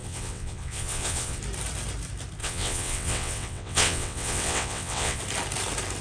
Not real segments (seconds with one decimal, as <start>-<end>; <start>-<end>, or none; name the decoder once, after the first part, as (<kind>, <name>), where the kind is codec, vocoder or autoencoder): 0.0-1.4 (vocoder, WaveNeXt); 2.4-5.2